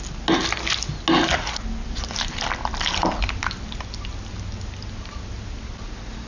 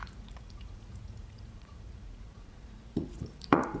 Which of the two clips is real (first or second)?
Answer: first